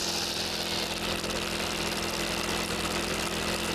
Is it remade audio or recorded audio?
recorded